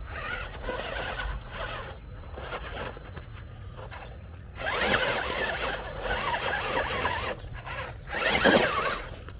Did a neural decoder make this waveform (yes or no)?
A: yes